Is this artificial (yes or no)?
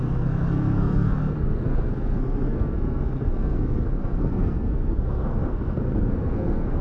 yes